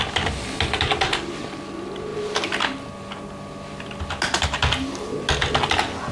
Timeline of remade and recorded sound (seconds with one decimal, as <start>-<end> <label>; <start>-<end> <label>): 0.0-6.1 recorded